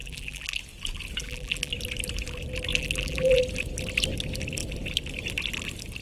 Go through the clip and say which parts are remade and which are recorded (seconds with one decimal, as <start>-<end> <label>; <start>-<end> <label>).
0.0-0.6 remade; 0.6-1.2 recorded; 1.2-1.7 remade; 1.7-2.7 recorded; 2.7-3.4 remade; 3.4-6.0 recorded